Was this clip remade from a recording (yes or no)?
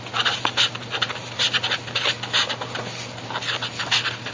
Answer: no